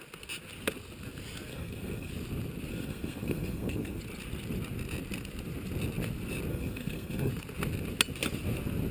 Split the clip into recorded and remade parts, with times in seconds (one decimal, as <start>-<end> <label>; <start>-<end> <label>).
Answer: 0.0-1.5 recorded; 1.5-2.1 remade; 2.1-2.7 recorded; 2.7-4.0 remade; 4.0-6.5 recorded; 6.5-7.3 remade; 7.3-8.9 recorded